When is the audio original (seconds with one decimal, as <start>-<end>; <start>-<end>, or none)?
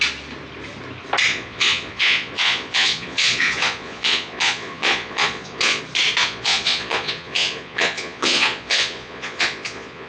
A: 0.0-1.3; 5.8-6.2